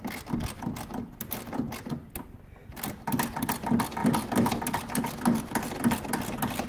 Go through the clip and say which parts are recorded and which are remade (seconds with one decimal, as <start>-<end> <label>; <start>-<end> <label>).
0.0-6.7 recorded